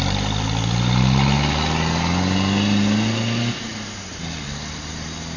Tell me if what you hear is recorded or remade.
recorded